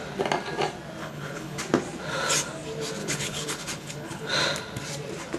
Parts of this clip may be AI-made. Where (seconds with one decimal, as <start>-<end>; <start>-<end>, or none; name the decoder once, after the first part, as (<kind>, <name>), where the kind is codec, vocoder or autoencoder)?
1.0-1.6 (codec, HILCodec); 3.0-4.3